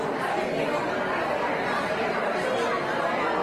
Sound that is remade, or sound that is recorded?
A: recorded